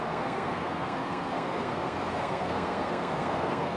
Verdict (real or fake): fake